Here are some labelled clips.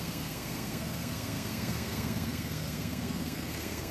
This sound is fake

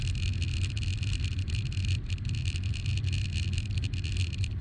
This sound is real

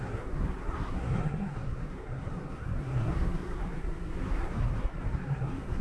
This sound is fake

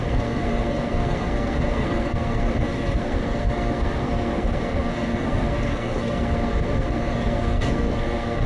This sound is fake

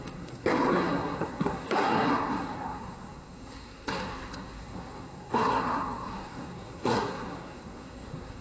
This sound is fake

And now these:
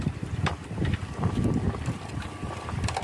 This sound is real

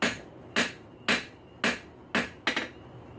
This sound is real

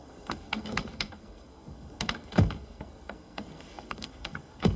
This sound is fake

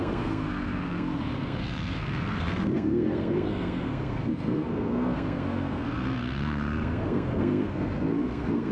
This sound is fake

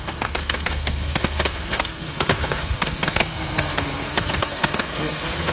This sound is fake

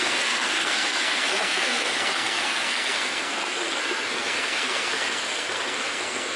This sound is fake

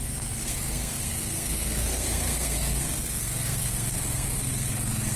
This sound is fake